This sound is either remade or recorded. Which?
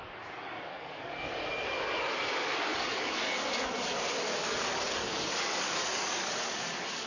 remade